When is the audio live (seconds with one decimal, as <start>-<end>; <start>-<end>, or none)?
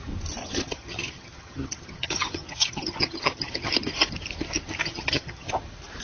0.0-0.4; 3.7-4.8; 5.5-6.0